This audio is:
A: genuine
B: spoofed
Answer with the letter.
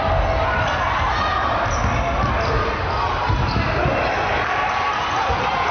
A